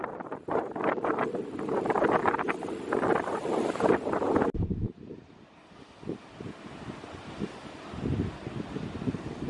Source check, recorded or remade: remade